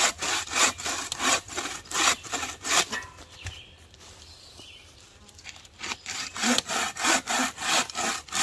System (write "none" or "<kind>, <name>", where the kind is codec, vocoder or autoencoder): vocoder, BigVGAN v2